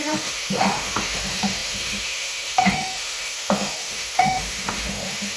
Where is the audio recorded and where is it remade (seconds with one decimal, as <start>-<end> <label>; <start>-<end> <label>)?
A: 0.0-5.4 remade